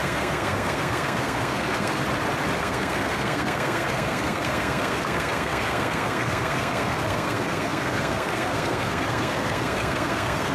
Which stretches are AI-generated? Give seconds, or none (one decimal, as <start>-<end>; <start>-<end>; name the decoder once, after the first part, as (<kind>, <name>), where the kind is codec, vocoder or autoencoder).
0.0-2.0 (codec, SNAC); 2.6-10.5